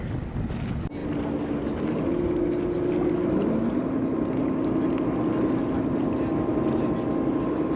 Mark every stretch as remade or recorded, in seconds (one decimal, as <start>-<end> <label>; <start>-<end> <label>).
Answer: 0.0-7.8 recorded